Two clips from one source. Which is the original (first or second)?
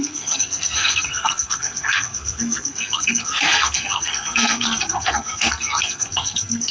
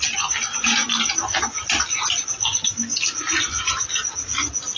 second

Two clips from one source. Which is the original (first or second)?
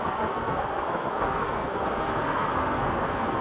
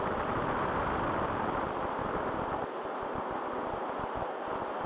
second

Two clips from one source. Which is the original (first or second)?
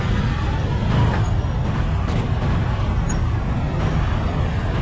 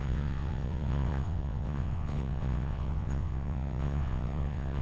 first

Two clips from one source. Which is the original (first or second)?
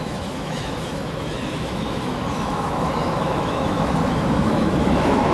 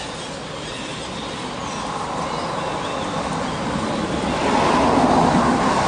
second